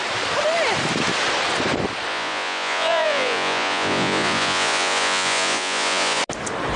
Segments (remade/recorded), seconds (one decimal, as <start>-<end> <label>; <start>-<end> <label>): 0.0-2.1 recorded; 2.1-6.2 remade; 6.2-6.8 recorded